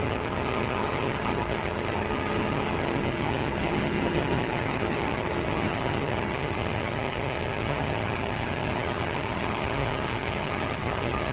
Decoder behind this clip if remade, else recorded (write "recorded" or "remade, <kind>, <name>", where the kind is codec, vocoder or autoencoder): remade, vocoder, HiFi-GAN